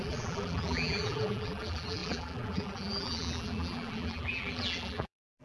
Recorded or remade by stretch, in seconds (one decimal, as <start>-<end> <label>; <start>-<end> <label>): 0.0-5.4 remade